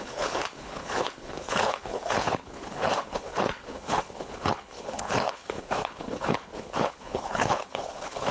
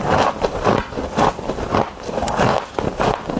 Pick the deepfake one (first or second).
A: first